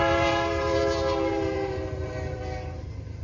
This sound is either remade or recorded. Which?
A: remade